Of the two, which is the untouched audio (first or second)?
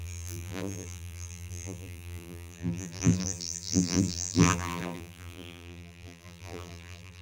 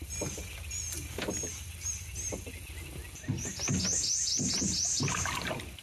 second